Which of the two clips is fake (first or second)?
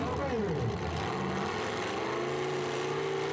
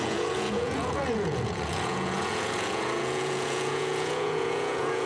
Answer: second